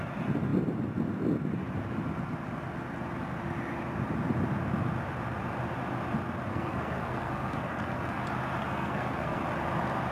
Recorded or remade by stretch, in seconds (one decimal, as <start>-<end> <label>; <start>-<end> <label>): 0.0-6.5 recorded; 6.5-8.2 remade; 8.2-8.6 recorded; 8.6-9.4 remade; 9.4-10.1 recorded